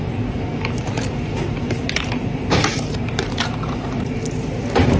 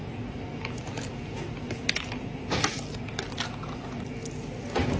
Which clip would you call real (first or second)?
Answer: second